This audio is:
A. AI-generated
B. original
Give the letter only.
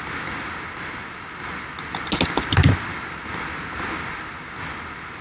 B